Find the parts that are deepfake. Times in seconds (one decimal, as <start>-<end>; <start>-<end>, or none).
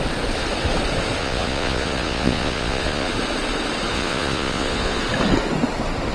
1.2-3.1; 3.9-5.0